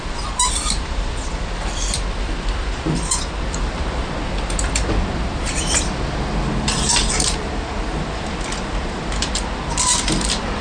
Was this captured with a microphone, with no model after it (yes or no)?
no